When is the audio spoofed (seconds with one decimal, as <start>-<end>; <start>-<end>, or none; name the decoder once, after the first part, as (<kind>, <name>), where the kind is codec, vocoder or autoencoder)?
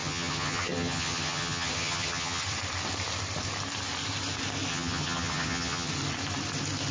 0.0-2.4 (vocoder, HiFi-GAN); 4.7-5.9